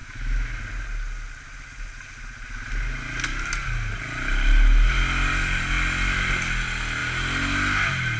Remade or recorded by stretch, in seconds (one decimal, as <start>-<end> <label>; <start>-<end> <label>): 0.0-0.6 remade; 0.6-8.2 recorded